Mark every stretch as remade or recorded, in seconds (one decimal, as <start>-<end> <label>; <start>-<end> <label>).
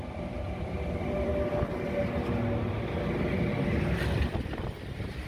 0.0-1.3 remade; 1.3-3.2 recorded; 3.2-5.3 remade